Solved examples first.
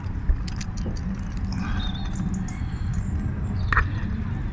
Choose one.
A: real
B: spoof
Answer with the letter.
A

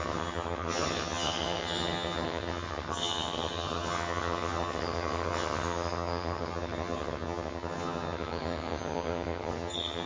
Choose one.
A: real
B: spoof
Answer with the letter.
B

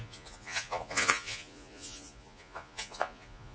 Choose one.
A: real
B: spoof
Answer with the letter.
B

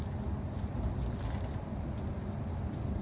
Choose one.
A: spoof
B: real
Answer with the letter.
B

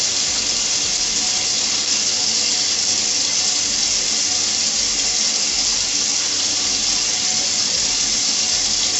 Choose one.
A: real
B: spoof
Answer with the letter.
A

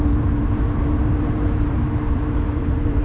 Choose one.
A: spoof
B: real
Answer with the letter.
A